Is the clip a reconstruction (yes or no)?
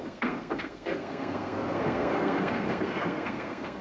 yes